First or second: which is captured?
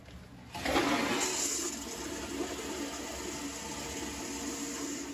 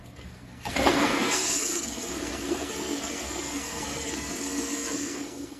first